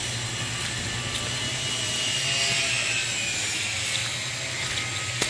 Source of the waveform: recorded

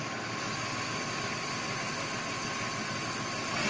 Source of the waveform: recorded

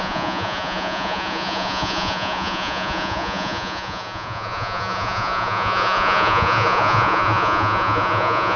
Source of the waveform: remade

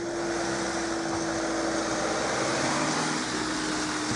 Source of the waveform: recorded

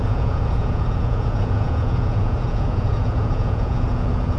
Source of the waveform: remade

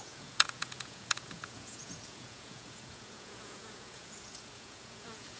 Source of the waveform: remade